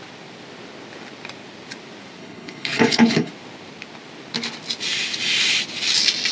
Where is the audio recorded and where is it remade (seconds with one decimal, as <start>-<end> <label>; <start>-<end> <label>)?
0.0-2.2 recorded; 2.2-3.3 remade; 3.3-6.3 recorded